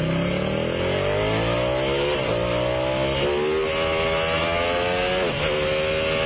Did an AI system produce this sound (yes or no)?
no